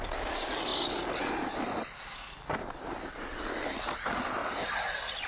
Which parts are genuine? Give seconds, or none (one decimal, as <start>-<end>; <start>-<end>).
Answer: 0.0-5.3